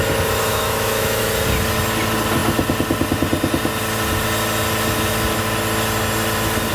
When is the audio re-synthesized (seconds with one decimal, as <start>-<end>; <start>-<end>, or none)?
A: 0.5-1.2